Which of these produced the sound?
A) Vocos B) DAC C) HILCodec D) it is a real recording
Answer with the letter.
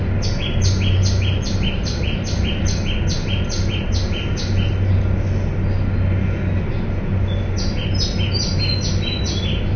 D